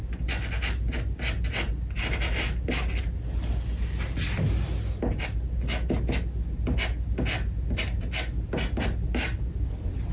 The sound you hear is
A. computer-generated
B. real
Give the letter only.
B